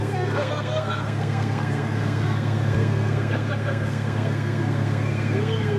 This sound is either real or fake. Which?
fake